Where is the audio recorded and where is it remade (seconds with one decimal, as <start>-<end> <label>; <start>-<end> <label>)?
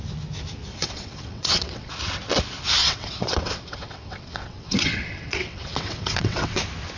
0.0-0.7 recorded; 0.7-1.9 remade; 1.9-2.8 recorded; 2.8-6.6 remade; 6.6-7.0 recorded